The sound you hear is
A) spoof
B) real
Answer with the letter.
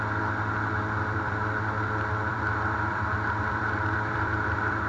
A